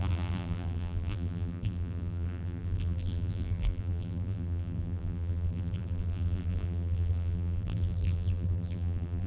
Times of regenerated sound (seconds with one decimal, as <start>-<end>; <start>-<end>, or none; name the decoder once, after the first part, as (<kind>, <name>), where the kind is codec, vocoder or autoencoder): 0.0-9.3 (vocoder, BigVGAN v2)